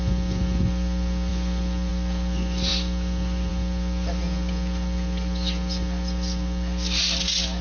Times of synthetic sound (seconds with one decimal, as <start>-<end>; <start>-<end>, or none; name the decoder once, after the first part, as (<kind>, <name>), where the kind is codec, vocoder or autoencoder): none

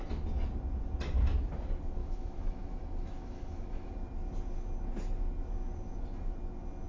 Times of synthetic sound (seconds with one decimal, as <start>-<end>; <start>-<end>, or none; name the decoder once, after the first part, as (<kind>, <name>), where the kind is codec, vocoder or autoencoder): 2.0-3.9 (autoencoder, DAC-VAE)

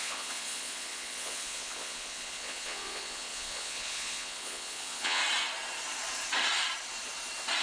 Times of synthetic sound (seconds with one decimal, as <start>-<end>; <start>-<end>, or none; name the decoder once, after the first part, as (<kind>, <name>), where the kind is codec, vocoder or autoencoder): 0.0-5.2 (vocoder, Vocos)

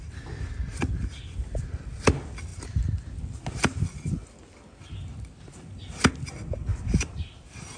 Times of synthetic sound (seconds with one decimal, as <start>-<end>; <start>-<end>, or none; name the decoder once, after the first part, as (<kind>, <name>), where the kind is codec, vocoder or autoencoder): 6.7-7.3 (vocoder, BigVGAN v2)

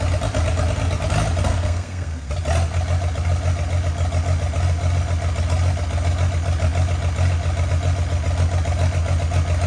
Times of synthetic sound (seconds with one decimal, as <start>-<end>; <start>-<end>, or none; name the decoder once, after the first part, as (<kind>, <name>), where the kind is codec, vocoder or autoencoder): 1.5-2.3 (codec, SNAC)